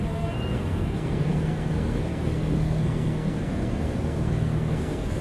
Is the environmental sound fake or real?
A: fake